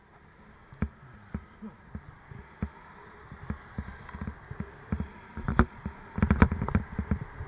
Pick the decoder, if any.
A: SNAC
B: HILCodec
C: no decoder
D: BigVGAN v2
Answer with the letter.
C